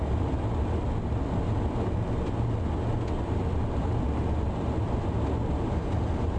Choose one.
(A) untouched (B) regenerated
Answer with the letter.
A